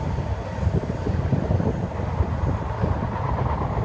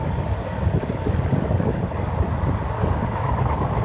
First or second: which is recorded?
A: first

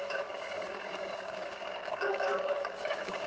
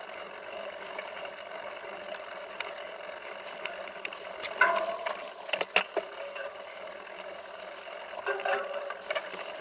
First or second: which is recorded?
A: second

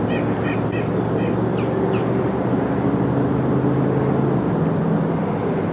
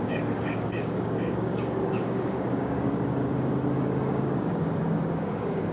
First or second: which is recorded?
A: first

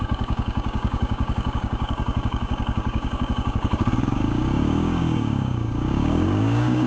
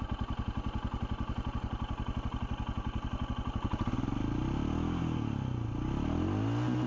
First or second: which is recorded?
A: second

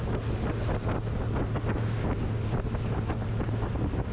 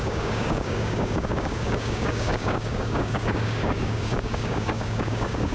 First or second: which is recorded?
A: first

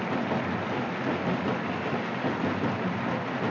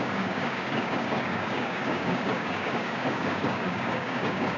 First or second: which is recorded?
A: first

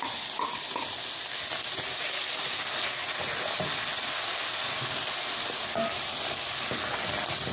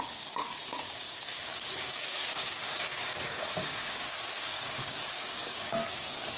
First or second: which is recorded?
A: first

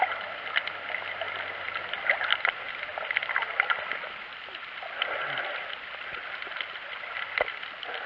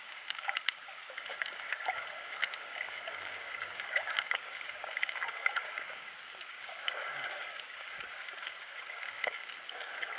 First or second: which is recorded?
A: first